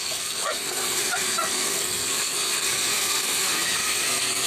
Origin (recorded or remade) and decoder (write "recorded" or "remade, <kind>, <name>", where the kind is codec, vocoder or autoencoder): remade, codec, SNAC